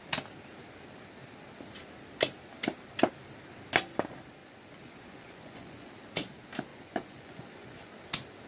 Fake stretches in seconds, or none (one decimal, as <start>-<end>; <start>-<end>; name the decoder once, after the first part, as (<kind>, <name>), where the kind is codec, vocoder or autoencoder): 4.4-5.9 (vocoder, Vocos); 6.7-7.9